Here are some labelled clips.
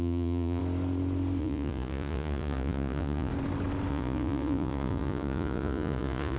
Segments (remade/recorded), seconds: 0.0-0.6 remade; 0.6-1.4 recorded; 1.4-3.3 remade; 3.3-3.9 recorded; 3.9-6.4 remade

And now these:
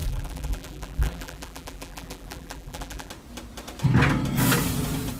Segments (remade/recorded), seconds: 0.0-3.1 remade; 3.1-5.2 recorded